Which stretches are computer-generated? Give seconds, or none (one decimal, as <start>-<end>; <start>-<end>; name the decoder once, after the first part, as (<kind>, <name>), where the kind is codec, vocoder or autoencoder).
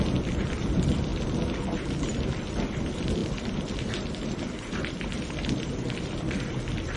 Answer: 0.0-1.1 (vocoder, BigVGAN v2); 2.5-7.0